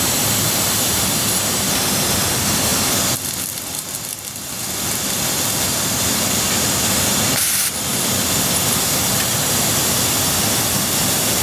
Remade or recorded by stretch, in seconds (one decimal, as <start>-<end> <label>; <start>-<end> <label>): 0.0-11.4 remade